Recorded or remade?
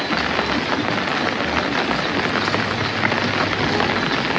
recorded